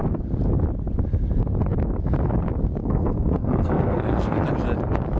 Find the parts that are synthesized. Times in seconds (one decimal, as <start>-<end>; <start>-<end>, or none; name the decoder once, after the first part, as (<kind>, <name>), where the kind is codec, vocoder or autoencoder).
2.8-4.5 (codec, SNAC)